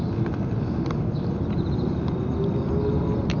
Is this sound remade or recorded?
recorded